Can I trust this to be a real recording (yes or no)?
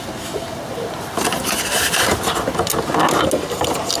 yes